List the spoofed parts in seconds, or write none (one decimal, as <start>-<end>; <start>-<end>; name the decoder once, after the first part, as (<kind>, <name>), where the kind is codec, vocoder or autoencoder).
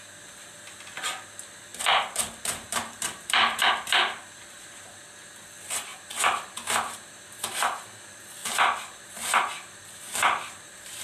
1.7-3.7 (vocoder, BigVGAN v2); 5.9-8.0; 8.4-11.0